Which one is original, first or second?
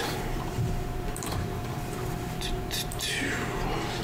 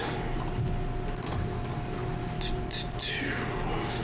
second